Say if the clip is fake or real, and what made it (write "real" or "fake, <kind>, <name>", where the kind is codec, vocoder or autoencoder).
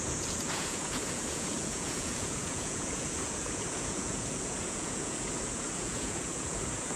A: fake, vocoder, Vocos